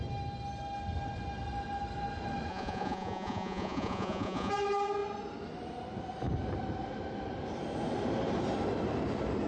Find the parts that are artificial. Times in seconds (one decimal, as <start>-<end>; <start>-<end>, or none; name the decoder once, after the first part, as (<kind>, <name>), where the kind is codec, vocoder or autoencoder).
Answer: 2.5-4.5 (vocoder, Vocos)

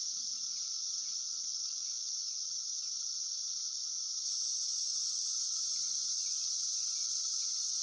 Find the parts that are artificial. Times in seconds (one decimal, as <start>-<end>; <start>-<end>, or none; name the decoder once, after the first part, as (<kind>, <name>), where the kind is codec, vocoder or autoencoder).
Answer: none

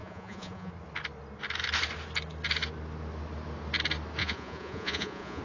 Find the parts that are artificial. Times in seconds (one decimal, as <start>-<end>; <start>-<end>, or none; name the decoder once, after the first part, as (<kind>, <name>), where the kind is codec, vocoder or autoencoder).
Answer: 0.0-0.7 (vocoder, Vocos); 4.2-5.4

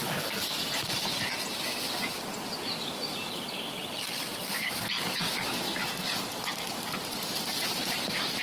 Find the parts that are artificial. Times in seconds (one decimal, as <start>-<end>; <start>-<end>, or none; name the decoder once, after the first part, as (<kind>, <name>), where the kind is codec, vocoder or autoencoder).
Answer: none

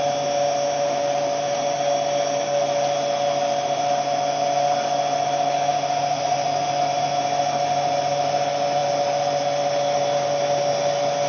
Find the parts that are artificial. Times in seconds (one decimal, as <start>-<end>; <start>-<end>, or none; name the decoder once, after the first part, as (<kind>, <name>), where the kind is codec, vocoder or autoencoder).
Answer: none

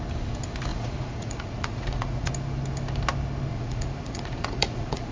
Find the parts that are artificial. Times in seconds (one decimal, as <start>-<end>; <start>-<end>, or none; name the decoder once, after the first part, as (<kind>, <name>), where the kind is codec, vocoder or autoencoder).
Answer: 0.7-2.3 (vocoder, Vocos); 3.5-5.1

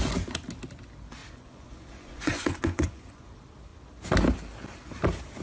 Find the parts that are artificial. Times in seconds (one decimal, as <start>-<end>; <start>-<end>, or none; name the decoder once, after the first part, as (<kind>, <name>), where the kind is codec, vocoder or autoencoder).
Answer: 1.2-3.3 (vocoder, Vocos)

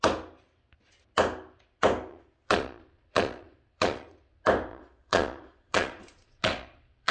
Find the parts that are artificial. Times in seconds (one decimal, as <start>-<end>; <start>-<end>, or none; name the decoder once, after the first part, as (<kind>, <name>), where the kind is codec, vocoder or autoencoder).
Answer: 2.1-4.3 (vocoder, Vocos); 4.7-7.1